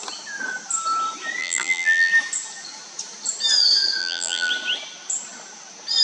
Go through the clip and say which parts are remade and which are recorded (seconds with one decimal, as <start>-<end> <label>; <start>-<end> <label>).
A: 0.0-1.4 recorded; 1.4-2.1 remade; 2.1-4.0 recorded; 4.0-4.5 remade; 4.5-6.0 recorded

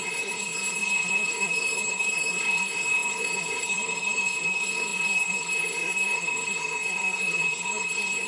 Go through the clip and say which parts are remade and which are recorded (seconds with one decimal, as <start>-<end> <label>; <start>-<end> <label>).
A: 0.0-8.3 remade

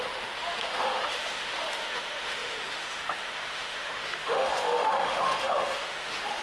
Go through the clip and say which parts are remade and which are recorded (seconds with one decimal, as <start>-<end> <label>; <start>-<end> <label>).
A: 0.0-6.4 remade

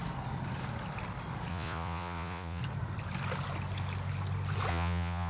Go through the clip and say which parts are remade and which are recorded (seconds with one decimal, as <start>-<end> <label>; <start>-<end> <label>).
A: 0.0-1.5 recorded; 1.5-2.6 remade; 2.6-4.7 recorded; 4.7-5.3 remade

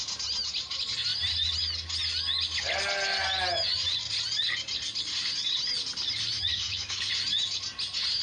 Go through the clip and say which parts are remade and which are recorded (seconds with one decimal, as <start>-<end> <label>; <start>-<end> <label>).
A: 0.0-6.5 recorded; 6.5-7.1 remade; 7.1-8.2 recorded

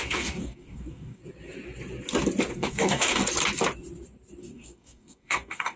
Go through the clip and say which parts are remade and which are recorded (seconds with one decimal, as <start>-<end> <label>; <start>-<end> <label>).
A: 0.0-1.2 remade; 1.2-2.5 recorded; 2.5-3.2 remade; 3.2-4.4 recorded; 4.4-5.8 remade

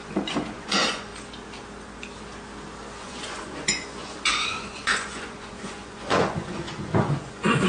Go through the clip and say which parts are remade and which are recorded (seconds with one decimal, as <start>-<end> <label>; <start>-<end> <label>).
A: 0.0-1.1 remade; 1.1-3.0 recorded; 3.0-7.7 remade